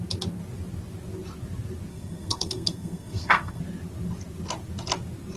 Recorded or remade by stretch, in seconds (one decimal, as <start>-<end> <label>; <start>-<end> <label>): 0.0-1.9 recorded; 1.9-3.6 remade; 3.6-5.4 recorded